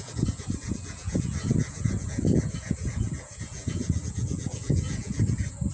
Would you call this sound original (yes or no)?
no